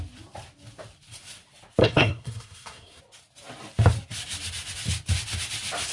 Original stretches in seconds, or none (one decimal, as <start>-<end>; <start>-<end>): 0.0-1.8; 3.0-5.9